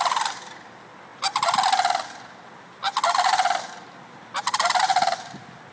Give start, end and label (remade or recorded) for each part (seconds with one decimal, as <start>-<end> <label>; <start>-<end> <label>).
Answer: 0.0-5.7 recorded